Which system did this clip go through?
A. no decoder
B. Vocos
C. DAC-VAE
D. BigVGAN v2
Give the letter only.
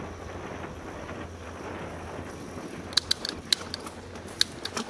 A